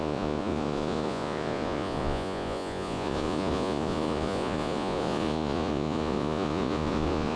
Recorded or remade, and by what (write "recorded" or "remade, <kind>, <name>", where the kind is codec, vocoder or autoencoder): remade, vocoder, Vocos